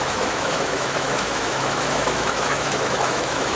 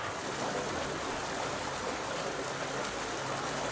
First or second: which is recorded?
second